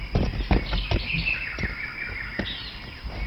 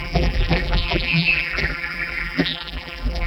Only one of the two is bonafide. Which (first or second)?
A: first